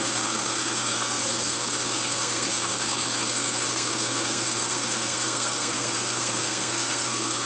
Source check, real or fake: fake